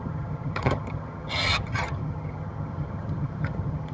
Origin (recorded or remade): remade